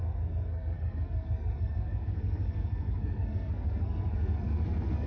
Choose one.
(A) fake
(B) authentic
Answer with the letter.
A